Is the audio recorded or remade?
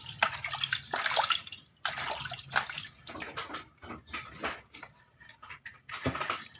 recorded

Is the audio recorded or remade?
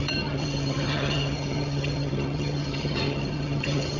remade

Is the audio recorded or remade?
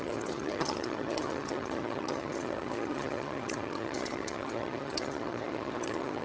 remade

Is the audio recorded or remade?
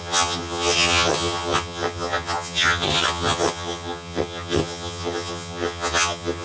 remade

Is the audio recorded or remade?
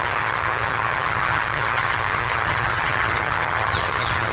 remade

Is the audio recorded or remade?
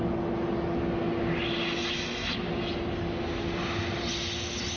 recorded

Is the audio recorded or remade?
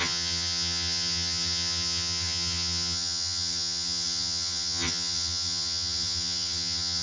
remade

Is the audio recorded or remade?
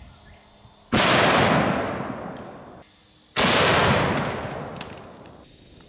recorded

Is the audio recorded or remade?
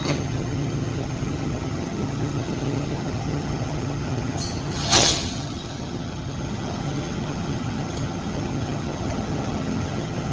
remade